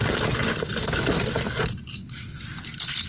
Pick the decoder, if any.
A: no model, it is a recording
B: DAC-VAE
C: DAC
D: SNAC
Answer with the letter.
A